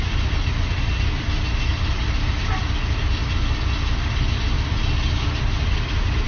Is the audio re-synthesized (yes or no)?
no